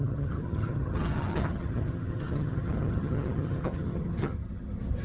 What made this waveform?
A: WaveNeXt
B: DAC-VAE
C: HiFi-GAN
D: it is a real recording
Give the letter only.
C